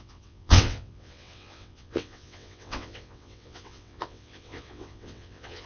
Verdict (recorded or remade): remade